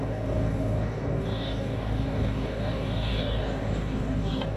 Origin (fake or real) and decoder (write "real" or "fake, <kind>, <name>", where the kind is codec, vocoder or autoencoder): fake, codec, DAC